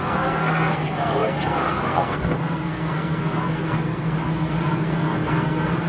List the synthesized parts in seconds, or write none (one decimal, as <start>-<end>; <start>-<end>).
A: 0.0-5.9